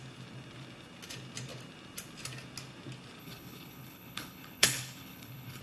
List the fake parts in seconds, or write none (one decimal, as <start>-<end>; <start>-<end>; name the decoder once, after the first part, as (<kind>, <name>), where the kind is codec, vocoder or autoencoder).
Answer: 3.2-5.6 (codec, HILCodec)